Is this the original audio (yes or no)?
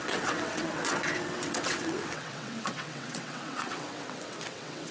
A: no